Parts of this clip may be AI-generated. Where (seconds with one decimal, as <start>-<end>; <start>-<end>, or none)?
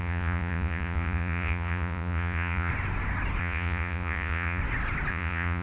0.0-2.7; 3.4-4.6; 5.1-5.6